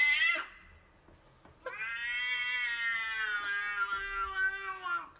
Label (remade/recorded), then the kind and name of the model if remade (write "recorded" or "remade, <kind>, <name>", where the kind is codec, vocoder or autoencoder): recorded